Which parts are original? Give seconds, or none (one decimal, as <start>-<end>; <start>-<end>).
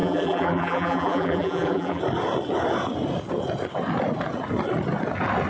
2.0-5.5